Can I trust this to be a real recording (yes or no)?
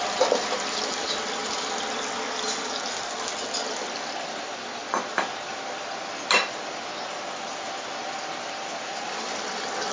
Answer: yes